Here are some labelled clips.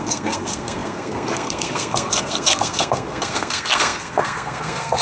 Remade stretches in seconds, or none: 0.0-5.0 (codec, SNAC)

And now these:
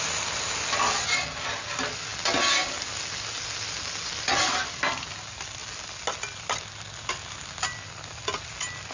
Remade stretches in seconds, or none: none